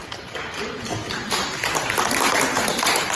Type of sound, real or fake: real